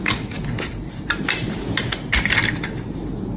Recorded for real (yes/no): yes